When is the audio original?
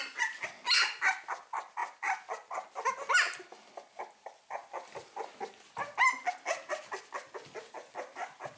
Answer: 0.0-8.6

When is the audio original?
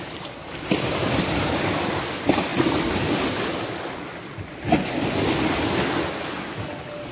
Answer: 0.0-7.1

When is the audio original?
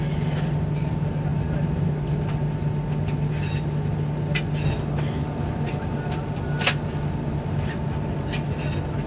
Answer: 0.0-9.1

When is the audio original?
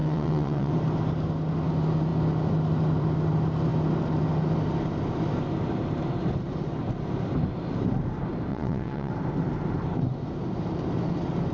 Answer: 0.7-8.5; 9.1-11.5